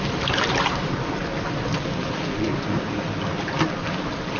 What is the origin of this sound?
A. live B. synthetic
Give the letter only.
A